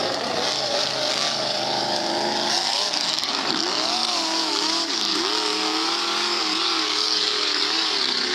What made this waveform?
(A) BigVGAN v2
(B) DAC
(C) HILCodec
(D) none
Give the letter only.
B